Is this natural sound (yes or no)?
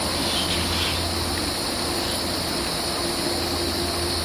yes